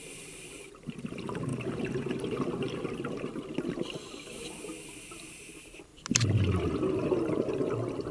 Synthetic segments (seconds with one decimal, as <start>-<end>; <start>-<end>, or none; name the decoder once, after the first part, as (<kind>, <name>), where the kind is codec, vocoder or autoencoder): none